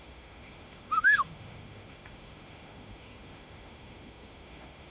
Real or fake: fake